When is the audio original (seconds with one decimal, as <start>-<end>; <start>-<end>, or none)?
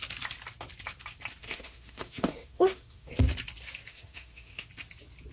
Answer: 0.0-1.4; 3.1-3.9; 4.7-5.3